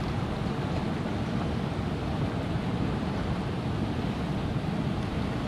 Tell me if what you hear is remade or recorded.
recorded